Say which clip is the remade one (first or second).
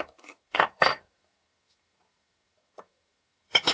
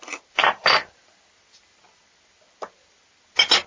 first